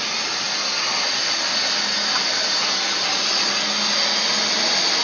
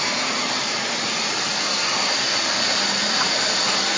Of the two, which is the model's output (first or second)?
second